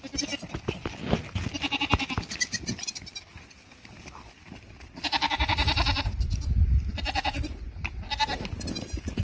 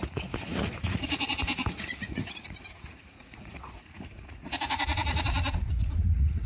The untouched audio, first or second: first